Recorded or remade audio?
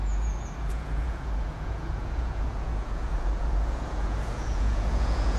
remade